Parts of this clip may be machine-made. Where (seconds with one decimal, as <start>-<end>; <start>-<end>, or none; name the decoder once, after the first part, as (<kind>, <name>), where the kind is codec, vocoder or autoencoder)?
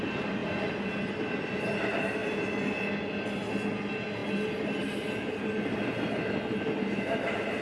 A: none